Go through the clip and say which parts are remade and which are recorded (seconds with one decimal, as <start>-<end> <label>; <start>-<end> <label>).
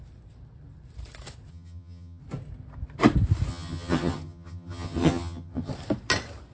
0.0-1.5 recorded; 1.5-2.2 remade; 2.2-3.5 recorded; 3.5-5.7 remade; 5.7-6.5 recorded